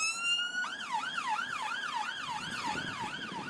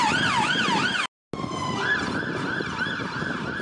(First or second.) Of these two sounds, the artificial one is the first